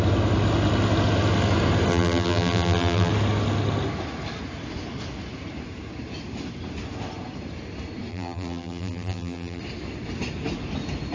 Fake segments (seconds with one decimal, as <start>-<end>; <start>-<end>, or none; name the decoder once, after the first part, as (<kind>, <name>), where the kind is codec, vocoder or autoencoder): 1.9-3.1 (vocoder, BigVGAN v2); 8.1-9.6